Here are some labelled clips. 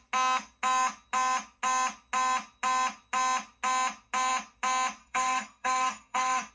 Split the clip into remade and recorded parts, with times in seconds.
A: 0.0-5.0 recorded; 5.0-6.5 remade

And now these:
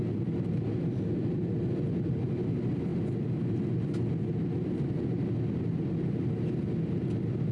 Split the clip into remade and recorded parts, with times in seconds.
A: 0.0-7.5 recorded

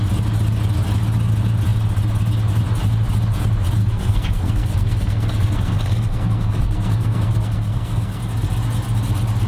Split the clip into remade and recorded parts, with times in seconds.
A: 0.0-3.8 recorded; 3.8-8.2 remade; 8.2-9.5 recorded

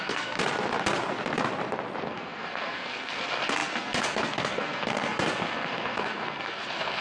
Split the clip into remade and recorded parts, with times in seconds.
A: 0.0-0.4 remade; 0.4-2.1 recorded; 2.1-7.0 remade

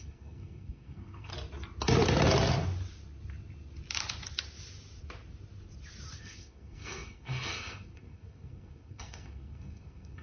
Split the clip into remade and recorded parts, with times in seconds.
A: 0.0-1.3 remade; 1.3-6.2 recorded; 6.2-10.2 remade

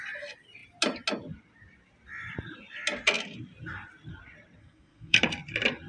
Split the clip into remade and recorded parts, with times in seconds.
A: 0.0-4.6 recorded; 4.6-5.2 remade; 5.2-5.9 recorded

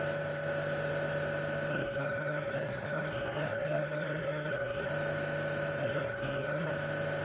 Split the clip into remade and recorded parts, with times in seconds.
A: 0.0-1.7 recorded; 1.7-4.9 remade; 4.9-5.8 recorded; 5.8-6.7 remade; 6.7-7.2 recorded

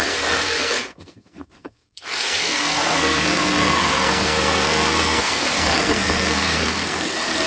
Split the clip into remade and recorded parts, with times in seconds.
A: 0.0-7.5 remade